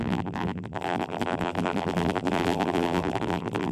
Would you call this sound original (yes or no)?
no